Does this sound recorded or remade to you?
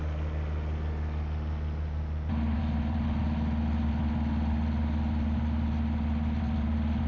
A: recorded